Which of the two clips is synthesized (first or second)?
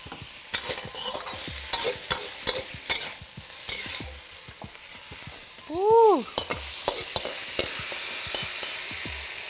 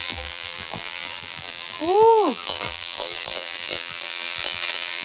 second